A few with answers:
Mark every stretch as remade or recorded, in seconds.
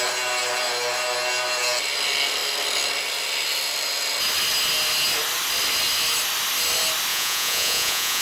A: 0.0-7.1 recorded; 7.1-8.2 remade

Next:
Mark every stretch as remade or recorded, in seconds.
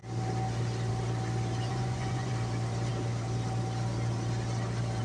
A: 0.0-1.7 recorded; 1.7-2.3 remade; 2.3-5.0 recorded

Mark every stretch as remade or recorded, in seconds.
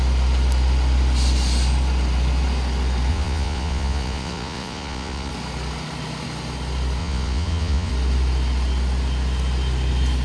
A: 0.0-3.1 recorded; 3.1-5.3 remade; 5.3-7.0 recorded; 7.0-7.9 remade; 7.9-10.2 recorded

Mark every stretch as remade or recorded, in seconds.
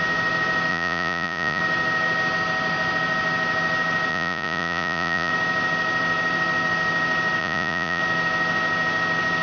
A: 0.0-0.7 recorded; 0.7-1.6 remade; 1.6-4.1 recorded; 4.1-5.3 remade; 5.3-7.4 recorded; 7.4-8.0 remade; 8.0-9.4 recorded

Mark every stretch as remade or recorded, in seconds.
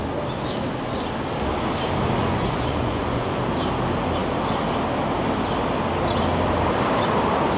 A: 0.0-2.2 recorded; 2.2-3.4 remade; 3.4-7.6 recorded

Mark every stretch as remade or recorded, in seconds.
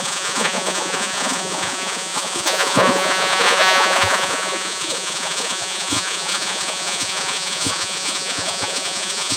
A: 0.0-9.4 remade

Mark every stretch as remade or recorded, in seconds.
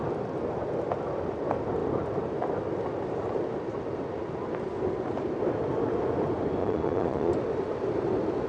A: 0.0-6.6 recorded; 6.6-7.3 remade; 7.3-8.5 recorded